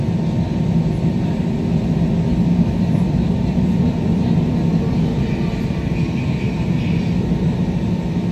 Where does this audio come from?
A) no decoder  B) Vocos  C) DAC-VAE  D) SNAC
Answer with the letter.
A